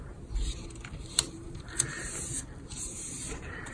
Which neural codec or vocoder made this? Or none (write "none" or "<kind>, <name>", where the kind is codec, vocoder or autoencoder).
vocoder, BigVGAN v2